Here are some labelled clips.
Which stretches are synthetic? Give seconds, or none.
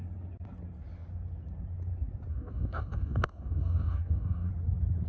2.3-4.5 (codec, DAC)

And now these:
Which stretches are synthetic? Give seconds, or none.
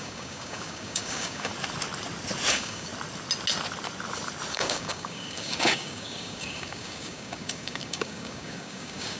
0.0-1.5 (codec, DAC); 2.5-2.9; 4.5-9.2